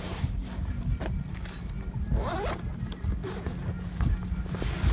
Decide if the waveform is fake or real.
real